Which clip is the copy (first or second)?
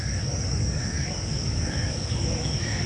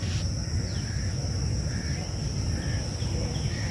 first